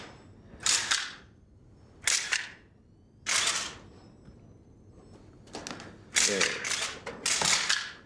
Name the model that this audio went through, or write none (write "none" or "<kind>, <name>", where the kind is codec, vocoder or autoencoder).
none